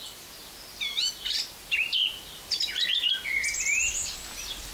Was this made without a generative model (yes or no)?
yes